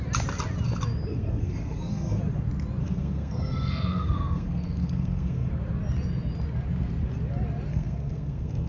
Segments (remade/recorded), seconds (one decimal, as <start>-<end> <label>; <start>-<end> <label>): 0.0-1.1 recorded; 1.1-2.2 remade; 2.2-2.8 recorded; 2.8-5.5 remade; 5.5-7.7 recorded; 7.7-8.7 remade